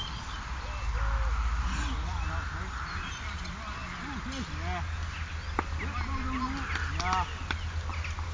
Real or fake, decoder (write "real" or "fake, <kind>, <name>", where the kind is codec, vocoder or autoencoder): real